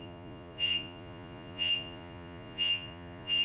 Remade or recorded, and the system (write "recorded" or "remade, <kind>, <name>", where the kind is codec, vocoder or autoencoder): remade, vocoder, Vocos